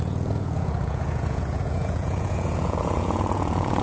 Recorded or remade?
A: remade